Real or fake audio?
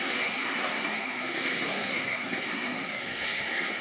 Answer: fake